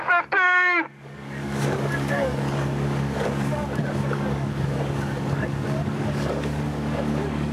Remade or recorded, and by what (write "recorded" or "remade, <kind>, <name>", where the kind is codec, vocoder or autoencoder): remade, codec, DAC